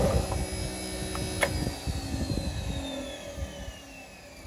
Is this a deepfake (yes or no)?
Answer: no